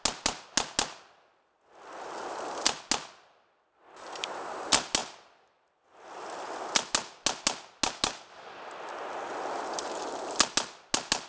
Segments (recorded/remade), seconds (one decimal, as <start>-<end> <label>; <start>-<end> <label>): 0.0-11.3 recorded